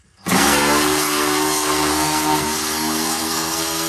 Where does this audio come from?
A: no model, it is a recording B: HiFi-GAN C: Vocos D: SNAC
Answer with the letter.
D